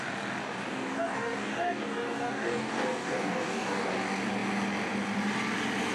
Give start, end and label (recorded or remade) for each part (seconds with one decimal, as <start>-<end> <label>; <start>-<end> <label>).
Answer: 0.0-0.4 recorded; 0.4-3.9 remade; 3.9-5.9 recorded